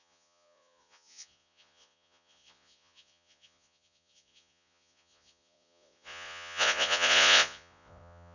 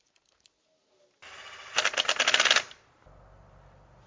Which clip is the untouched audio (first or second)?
second